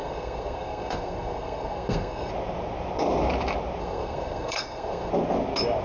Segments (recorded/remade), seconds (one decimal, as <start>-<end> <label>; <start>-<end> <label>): 0.0-2.3 remade; 2.3-3.8 recorded; 3.8-5.1 remade; 5.1-5.8 recorded

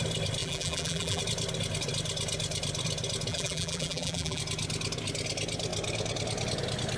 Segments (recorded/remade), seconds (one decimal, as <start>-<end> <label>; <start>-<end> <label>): 0.0-0.4 recorded; 0.4-1.2 remade; 1.2-3.3 recorded; 3.3-4.4 remade; 4.4-7.0 recorded